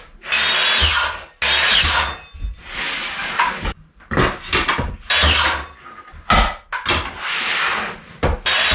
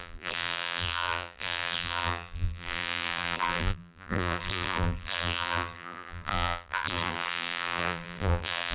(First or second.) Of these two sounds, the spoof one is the second